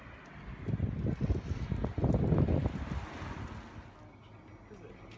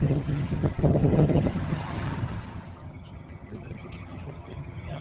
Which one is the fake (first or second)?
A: second